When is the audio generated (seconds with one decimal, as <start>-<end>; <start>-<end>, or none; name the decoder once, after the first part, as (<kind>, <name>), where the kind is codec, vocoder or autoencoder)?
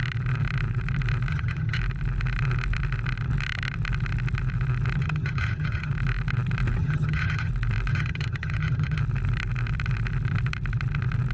1.3-1.8 (vocoder, HiFi-GAN); 5.0-5.9; 6.8-7.5; 7.9-9.0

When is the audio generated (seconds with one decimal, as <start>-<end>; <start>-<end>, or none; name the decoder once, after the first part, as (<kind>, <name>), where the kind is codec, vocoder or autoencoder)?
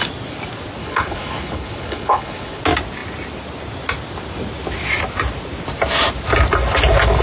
0.8-2.6 (codec, HILCodec)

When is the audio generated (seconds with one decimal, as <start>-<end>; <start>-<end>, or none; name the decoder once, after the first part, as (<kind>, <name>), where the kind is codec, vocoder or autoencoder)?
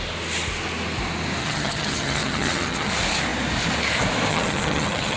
1.4-2.9 (vocoder, HiFi-GAN); 4.3-5.2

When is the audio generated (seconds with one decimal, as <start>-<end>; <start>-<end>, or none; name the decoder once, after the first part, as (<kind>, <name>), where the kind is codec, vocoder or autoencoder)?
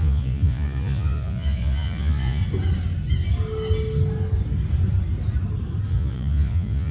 0.0-2.4 (vocoder, Vocos); 5.9-6.9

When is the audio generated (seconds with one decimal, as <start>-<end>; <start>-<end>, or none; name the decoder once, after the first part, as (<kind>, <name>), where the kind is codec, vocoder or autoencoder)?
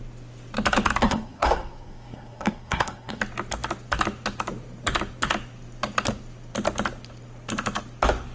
1.0-3.2 (codec, SNAC)